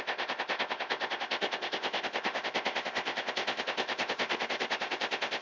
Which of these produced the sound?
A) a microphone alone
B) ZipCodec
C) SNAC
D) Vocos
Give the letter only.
B